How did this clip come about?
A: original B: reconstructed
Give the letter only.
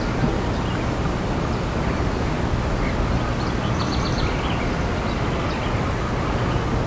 A